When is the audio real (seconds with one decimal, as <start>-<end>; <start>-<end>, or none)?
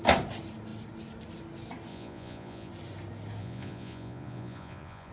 0.0-1.9; 2.7-3.4